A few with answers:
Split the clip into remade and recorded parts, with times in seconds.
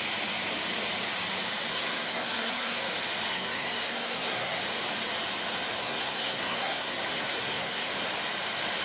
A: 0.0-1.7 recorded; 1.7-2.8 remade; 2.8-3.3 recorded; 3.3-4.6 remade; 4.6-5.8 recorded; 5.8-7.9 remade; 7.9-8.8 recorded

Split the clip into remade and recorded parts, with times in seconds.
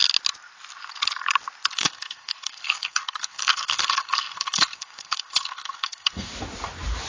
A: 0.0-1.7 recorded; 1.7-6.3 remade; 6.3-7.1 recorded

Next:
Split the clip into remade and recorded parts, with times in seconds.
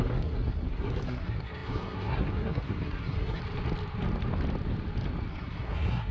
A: 0.0-3.4 remade; 3.4-5.3 recorded; 5.3-6.1 remade